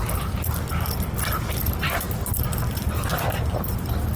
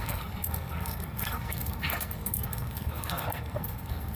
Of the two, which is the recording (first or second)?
first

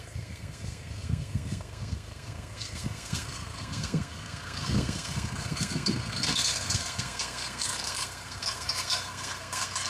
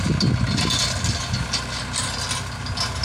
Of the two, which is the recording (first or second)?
second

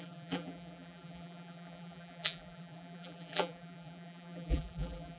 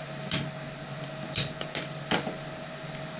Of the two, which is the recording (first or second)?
second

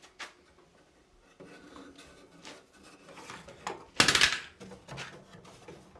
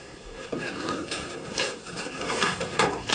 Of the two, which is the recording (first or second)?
first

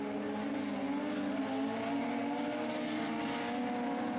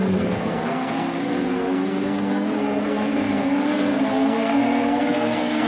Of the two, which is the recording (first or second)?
first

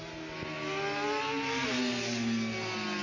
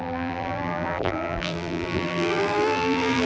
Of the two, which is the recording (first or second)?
first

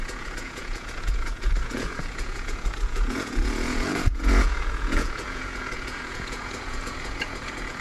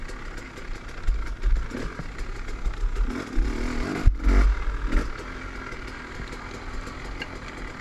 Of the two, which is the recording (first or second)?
second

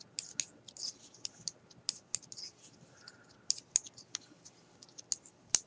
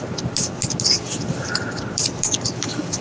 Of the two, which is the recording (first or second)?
first